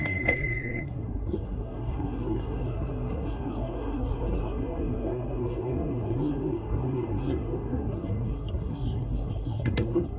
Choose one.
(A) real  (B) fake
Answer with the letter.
B